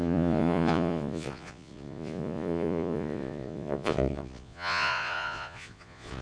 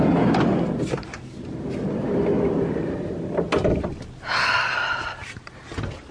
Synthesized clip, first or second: first